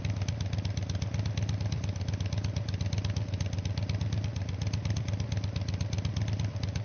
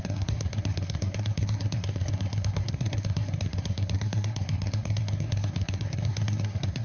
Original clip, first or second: first